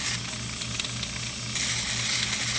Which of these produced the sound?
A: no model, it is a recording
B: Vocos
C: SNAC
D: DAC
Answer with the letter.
A